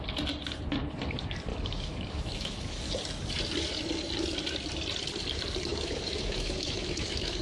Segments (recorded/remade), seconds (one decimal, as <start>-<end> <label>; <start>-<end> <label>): 0.0-1.5 recorded; 1.5-2.8 remade; 2.8-5.7 recorded; 5.7-7.4 remade

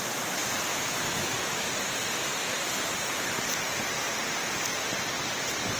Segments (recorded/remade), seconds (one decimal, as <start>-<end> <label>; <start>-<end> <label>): 0.0-0.7 recorded; 0.7-1.8 remade; 1.8-5.8 recorded

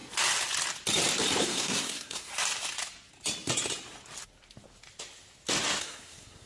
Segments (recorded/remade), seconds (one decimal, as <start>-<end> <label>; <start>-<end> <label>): 0.0-1.4 recorded; 1.4-2.3 remade; 2.3-5.8 recorded; 5.8-6.5 remade

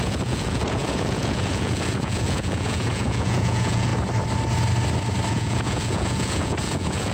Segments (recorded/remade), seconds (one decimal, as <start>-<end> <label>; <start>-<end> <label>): 0.0-3.9 remade; 3.9-5.3 recorded; 5.3-7.1 remade

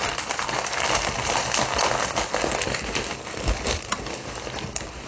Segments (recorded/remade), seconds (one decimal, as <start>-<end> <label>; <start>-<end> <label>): 0.0-5.1 recorded